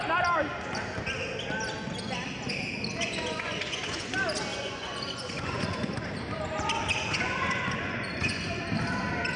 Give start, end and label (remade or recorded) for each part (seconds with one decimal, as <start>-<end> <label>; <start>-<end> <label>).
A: 0.0-3.0 recorded; 3.0-4.1 remade; 4.1-4.5 recorded; 4.5-6.1 remade; 6.1-7.1 recorded; 7.1-8.6 remade; 8.6-9.4 recorded